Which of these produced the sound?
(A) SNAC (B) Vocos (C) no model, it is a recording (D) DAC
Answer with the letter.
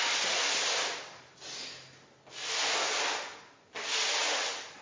C